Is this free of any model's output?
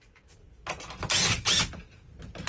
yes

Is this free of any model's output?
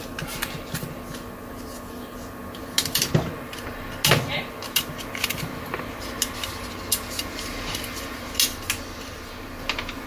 yes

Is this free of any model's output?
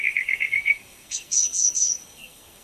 no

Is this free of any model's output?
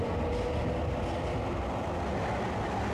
yes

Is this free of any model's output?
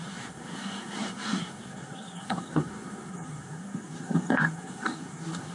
no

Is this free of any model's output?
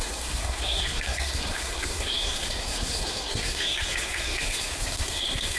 no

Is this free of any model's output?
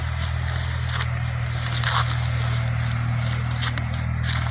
yes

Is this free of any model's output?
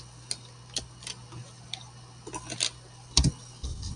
yes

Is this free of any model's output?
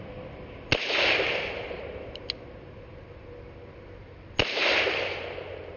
yes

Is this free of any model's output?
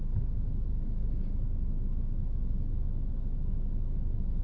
yes